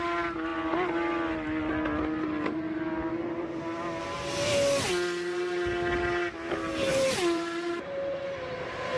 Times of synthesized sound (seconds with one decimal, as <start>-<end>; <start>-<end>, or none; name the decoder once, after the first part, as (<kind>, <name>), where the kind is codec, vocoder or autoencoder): 6.9-8.2 (vocoder, BigVGAN v2)